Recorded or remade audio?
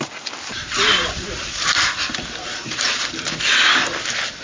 recorded